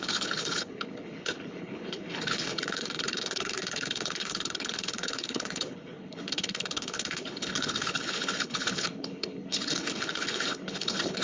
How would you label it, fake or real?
fake